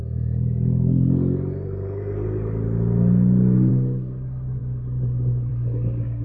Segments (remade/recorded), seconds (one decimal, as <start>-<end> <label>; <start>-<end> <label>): 0.0-6.2 recorded

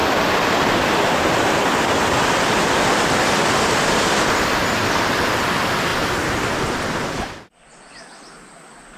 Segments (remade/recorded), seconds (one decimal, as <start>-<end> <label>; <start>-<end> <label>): 0.0-9.0 recorded

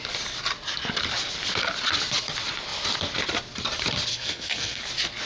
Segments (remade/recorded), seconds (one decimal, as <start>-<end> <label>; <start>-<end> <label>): 0.0-4.1 recorded; 4.1-4.8 remade; 4.8-5.3 recorded

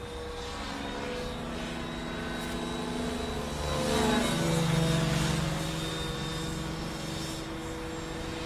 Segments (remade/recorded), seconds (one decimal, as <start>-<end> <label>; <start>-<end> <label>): 0.0-8.5 recorded